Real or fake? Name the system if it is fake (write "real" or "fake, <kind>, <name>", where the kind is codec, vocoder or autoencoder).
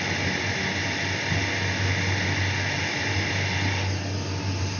real